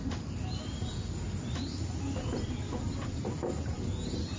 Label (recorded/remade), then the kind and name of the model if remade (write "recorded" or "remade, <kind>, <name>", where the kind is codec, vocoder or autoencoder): recorded